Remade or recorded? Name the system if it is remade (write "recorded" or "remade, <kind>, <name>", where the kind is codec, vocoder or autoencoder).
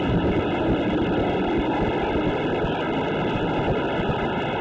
recorded